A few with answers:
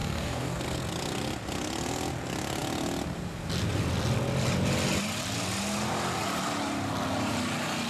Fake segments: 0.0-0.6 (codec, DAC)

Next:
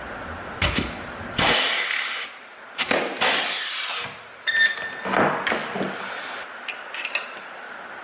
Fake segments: none

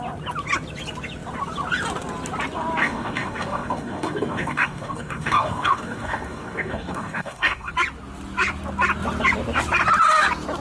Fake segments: 2.8-7.7 (codec, DAC)

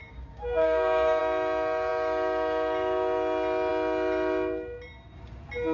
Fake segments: 0.0-1.2 (codec, DAC)

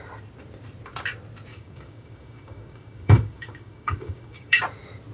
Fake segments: 1.5-4.6 (codec, DAC)

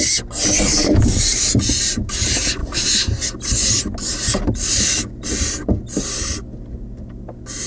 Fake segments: 0.7-1.4 (codec, DAC)

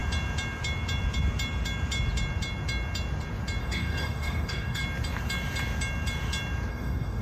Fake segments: 3.6-4.8 (codec, DAC); 6.7-7.2

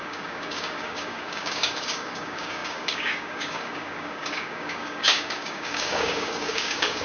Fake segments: 0.0-7.0 (codec, DAC)